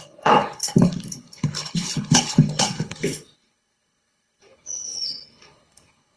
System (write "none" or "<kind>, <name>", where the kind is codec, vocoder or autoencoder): codec, HILCodec